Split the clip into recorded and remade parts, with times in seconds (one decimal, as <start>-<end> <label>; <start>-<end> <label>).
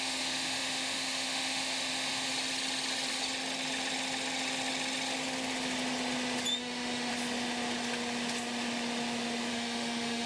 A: 0.0-2.3 remade; 2.3-6.6 recorded; 6.6-7.1 remade; 7.1-9.5 recorded; 9.5-10.3 remade